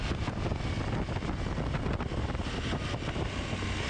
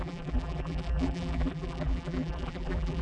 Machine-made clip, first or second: second